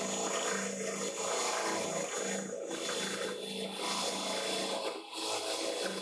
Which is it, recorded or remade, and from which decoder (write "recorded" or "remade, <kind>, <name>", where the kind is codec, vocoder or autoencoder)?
recorded